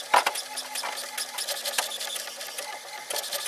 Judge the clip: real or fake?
real